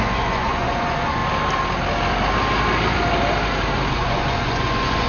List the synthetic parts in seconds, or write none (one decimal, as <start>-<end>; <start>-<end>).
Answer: 0.0-1.2; 3.9-5.1